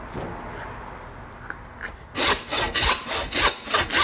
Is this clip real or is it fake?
real